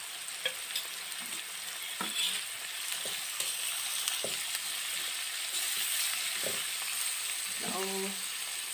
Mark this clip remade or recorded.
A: recorded